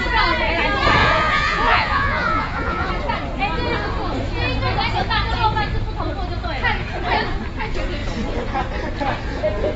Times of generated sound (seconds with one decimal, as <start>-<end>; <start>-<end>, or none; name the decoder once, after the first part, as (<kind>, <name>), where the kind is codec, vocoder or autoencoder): 1.0-2.9 (vocoder, Vocos)